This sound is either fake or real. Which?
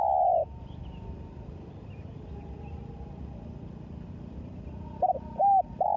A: real